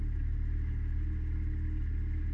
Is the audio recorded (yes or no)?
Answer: yes